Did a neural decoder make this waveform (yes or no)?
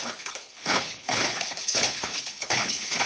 yes